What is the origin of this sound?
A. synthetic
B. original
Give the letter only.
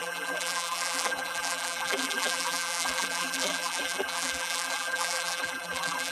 A